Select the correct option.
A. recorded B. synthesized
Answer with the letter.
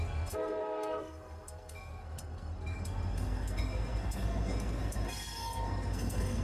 B